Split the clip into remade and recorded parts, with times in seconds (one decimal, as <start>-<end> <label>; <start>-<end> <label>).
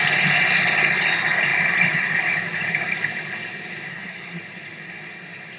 0.0-3.9 recorded; 3.9-4.4 remade; 4.4-5.6 recorded